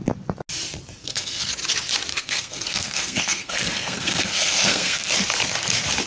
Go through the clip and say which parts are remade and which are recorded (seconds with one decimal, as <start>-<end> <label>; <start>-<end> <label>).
0.0-1.0 recorded; 1.0-1.5 remade; 1.5-2.1 recorded; 2.1-5.1 remade; 5.1-6.1 recorded